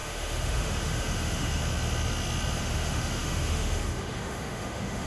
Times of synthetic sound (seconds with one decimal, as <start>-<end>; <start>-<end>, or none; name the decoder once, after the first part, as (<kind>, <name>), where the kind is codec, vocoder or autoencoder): 0.0-1.6 (autoencoder, DAC-VAE); 2.6-5.1

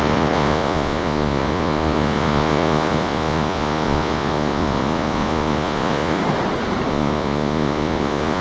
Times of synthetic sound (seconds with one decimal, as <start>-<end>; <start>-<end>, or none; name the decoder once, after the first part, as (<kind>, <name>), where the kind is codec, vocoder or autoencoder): 0.0-6.2 (vocoder, Vocos); 6.9-8.4

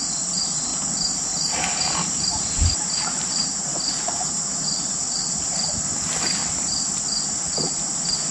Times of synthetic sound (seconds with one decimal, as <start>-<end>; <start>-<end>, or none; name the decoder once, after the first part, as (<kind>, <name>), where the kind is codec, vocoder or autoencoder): 0.0-0.7 (vocoder, BigVGAN v2); 1.3-6.4

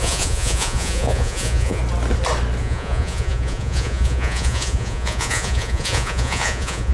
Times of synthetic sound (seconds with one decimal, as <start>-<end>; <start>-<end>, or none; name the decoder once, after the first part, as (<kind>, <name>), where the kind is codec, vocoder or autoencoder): 0.0-1.8 (vocoder, Vocos); 2.6-6.9